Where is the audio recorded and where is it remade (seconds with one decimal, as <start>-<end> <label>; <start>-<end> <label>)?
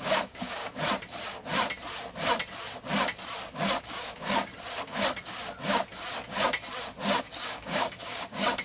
0.0-0.6 remade; 0.6-3.8 recorded; 3.8-4.5 remade; 4.5-7.2 recorded; 7.2-8.6 remade